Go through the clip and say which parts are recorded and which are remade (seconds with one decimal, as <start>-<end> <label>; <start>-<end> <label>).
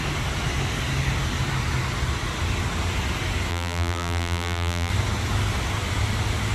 0.0-3.5 recorded; 3.5-4.9 remade; 4.9-6.5 recorded